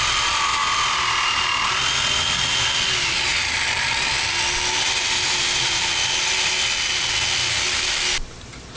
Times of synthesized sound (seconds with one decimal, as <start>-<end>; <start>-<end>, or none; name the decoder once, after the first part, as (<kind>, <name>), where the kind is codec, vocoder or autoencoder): none